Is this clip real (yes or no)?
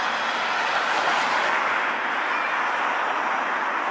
yes